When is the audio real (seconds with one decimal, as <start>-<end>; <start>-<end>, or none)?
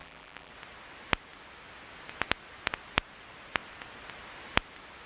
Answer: 0.5-5.1